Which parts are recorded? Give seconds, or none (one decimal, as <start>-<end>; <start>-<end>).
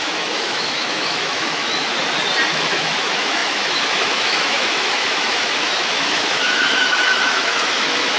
1.9-2.5